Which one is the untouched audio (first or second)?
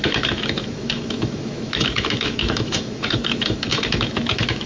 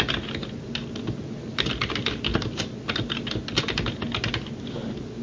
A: second